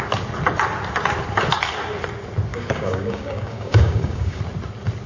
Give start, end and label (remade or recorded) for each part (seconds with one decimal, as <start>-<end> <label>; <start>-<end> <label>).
0.0-2.5 recorded; 2.5-4.4 remade; 4.4-5.1 recorded

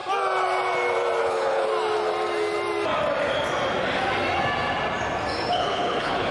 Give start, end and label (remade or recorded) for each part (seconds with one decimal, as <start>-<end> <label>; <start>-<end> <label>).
0.0-1.2 recorded; 1.2-1.7 remade; 1.7-5.5 recorded; 5.5-6.3 remade

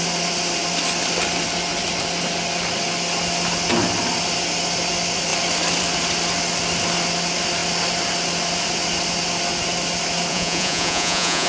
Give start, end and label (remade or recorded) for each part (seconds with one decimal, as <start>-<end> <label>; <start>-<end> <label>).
0.0-10.3 recorded; 10.3-11.5 remade

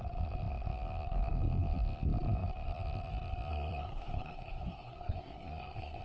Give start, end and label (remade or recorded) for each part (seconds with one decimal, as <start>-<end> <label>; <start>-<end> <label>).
0.0-3.5 recorded; 3.5-6.0 remade